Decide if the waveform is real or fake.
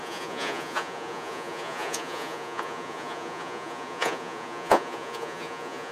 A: fake